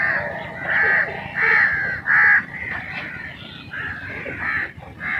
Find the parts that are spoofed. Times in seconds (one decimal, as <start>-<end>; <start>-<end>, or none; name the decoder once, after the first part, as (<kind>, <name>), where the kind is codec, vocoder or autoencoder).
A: none